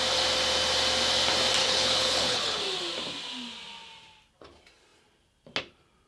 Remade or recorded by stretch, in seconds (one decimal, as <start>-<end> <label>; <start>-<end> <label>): 0.0-1.6 recorded; 1.6-2.6 remade; 2.6-6.1 recorded